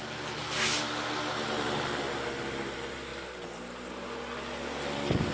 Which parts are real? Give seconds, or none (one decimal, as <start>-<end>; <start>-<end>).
0.0-5.3